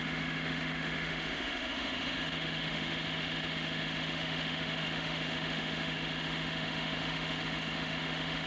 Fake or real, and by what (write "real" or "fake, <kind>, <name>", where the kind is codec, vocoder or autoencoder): fake, autoencoder, DAC-VAE